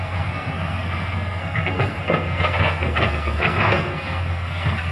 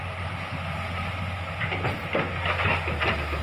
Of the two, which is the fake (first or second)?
first